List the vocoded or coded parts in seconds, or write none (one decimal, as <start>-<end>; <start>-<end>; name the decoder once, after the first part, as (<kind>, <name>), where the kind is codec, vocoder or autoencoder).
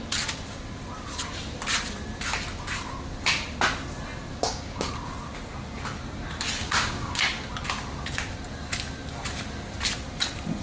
4.3-4.9 (codec, DAC); 6.6-7.2